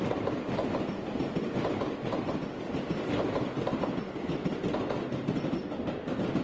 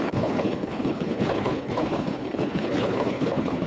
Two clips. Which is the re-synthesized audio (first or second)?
second